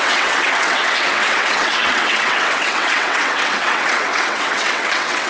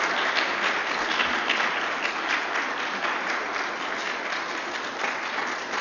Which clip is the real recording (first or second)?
second